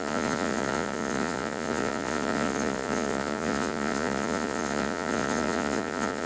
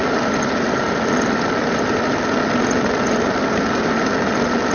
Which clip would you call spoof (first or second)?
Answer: first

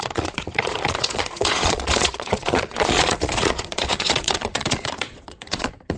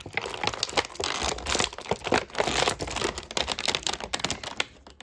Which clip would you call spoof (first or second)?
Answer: first